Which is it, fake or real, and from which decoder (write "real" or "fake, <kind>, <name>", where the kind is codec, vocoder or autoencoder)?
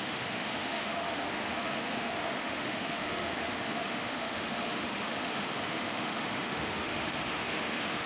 fake, autoencoder, DAC-VAE